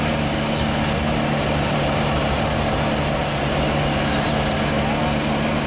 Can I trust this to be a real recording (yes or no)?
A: yes